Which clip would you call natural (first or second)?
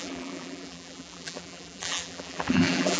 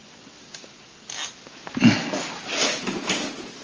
second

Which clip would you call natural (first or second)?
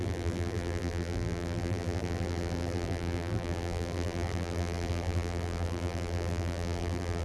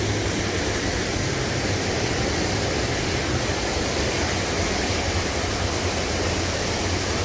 second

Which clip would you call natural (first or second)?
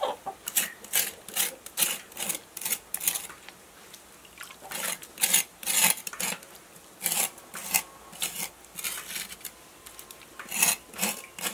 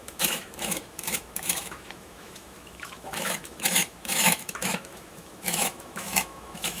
first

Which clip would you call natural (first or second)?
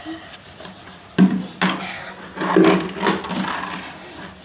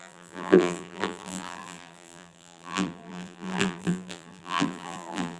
first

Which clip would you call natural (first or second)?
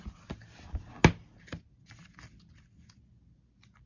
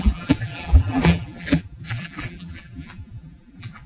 first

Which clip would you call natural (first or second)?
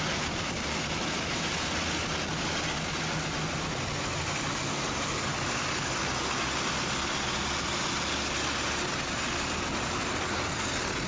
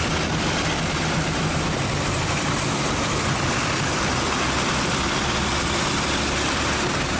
first